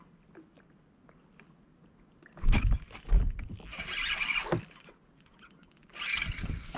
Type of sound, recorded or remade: recorded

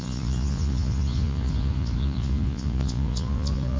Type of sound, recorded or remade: remade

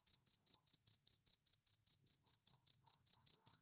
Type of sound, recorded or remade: remade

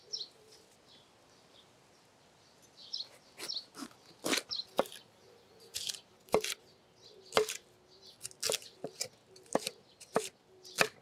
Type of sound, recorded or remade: recorded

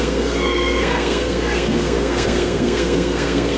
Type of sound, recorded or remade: remade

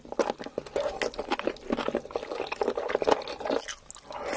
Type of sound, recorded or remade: recorded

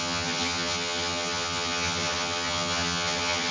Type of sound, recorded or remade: remade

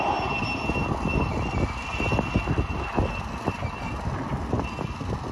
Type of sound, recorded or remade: recorded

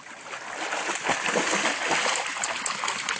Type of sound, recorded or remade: recorded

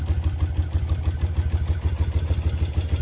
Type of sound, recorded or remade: recorded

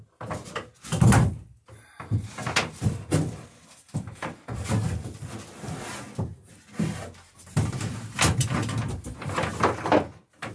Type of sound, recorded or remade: recorded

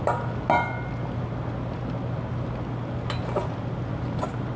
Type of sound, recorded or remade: recorded